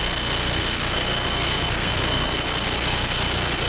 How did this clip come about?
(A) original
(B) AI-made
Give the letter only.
B